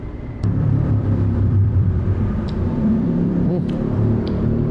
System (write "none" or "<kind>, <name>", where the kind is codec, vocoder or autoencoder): vocoder, BigVGAN v2